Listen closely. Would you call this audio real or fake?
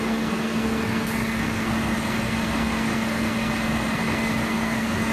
fake